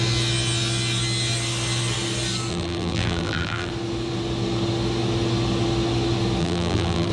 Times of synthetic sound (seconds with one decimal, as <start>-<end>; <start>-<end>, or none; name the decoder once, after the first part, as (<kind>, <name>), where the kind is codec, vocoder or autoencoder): 2.5-3.7 (vocoder, BigVGAN v2); 6.4-7.1